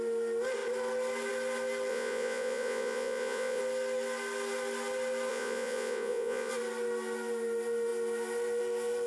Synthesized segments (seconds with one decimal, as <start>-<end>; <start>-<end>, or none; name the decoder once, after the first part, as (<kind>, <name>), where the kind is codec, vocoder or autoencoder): 1.9-3.6 (vocoder, Vocos); 5.3-6.5